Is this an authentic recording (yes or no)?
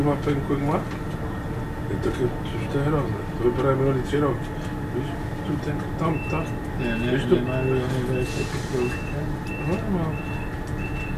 yes